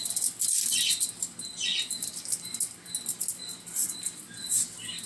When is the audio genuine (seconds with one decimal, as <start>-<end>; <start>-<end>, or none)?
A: 0.0-5.1